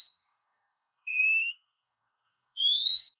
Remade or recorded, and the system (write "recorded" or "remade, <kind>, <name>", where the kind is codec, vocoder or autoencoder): remade, codec, DAC